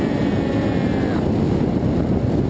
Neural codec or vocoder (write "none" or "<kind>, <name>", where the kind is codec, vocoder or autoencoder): none